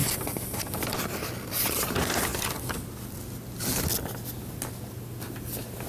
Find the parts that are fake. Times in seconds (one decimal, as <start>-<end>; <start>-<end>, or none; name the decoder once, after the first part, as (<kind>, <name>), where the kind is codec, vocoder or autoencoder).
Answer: none